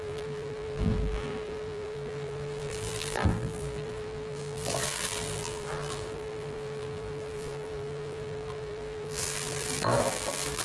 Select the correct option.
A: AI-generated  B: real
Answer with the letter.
A